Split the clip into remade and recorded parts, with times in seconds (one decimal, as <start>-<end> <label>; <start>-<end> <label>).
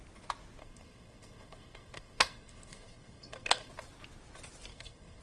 0.0-0.6 recorded; 0.6-3.7 remade; 3.7-4.7 recorded; 4.7-5.2 remade